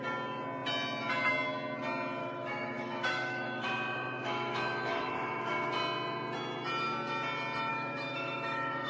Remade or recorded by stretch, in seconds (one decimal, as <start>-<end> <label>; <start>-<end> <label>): 0.0-2.2 recorded; 2.2-5.7 remade; 5.7-7.7 recorded; 7.7-8.9 remade